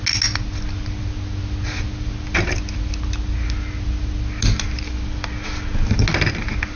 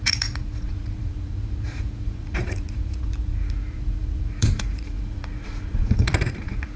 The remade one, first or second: second